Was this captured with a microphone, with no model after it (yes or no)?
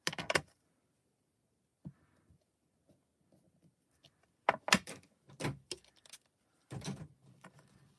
yes